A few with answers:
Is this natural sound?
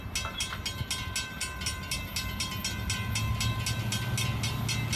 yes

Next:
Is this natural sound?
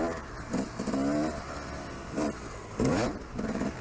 yes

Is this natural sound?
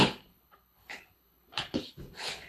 no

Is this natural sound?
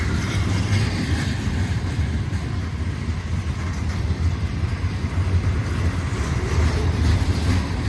no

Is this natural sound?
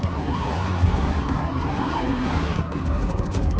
no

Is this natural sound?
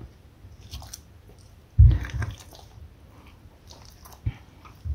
yes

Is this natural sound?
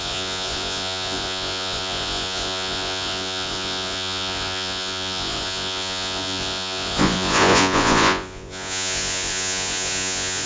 no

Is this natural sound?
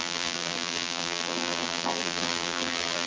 no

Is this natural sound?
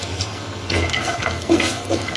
no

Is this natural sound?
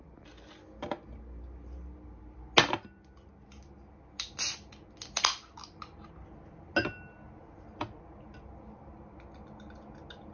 yes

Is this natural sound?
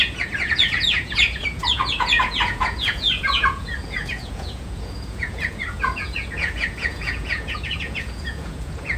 no